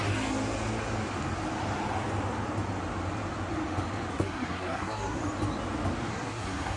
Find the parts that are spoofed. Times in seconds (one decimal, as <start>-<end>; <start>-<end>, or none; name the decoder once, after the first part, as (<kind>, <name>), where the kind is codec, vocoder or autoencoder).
4.1-5.2 (codec, SNAC); 6.1-6.8